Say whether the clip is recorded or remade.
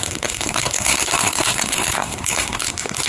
remade